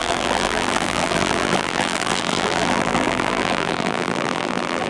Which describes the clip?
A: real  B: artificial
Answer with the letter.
B